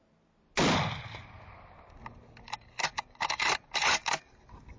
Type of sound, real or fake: real